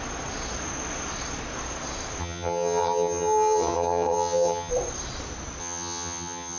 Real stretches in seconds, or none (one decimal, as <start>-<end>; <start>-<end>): 0.0-2.2; 4.7-5.6